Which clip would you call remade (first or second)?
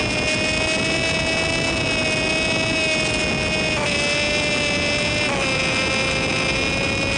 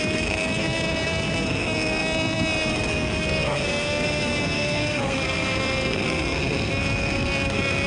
second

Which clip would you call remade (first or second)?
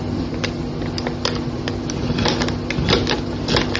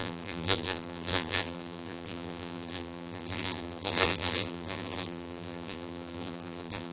second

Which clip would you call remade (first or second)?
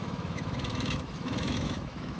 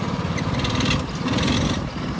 first